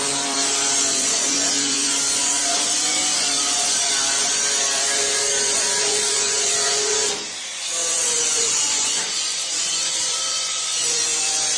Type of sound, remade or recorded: remade